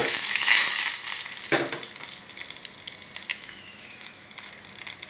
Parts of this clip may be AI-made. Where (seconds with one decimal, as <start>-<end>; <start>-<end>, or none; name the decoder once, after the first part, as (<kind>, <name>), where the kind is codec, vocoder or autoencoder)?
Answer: 0.0-0.7 (autoencoder, DAC-VAE); 3.3-4.5